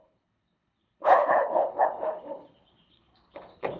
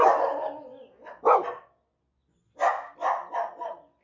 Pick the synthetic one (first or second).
first